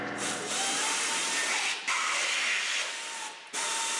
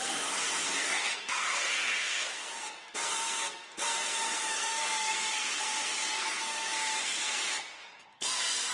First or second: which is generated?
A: second